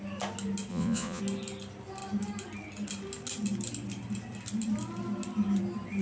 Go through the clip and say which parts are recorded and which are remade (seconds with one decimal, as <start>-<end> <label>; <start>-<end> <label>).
0.0-0.7 recorded; 0.7-1.2 remade; 1.2-6.0 recorded